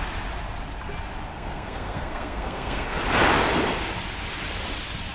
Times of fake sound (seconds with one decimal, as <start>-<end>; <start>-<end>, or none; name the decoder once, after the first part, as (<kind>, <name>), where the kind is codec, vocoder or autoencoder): 1.3-3.0 (codec, SNAC)